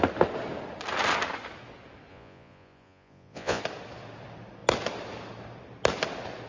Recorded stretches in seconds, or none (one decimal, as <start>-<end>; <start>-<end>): 0.0-2.1; 3.6-6.5